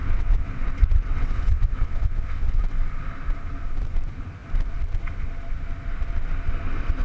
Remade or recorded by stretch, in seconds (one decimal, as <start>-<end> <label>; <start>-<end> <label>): 0.0-0.6 remade; 0.6-1.1 recorded; 1.1-2.6 remade; 2.6-7.0 recorded